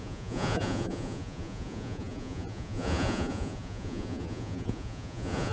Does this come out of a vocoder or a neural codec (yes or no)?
yes